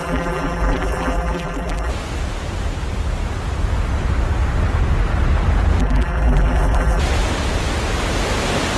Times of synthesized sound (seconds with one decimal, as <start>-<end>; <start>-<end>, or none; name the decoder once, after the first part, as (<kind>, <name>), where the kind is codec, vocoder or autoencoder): 0.0-1.9 (vocoder, BigVGAN v2); 5.8-7.0